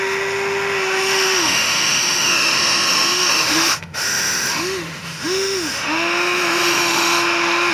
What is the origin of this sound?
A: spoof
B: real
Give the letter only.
A